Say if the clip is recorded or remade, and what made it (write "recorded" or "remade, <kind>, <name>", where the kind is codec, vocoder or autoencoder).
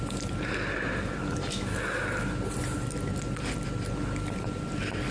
recorded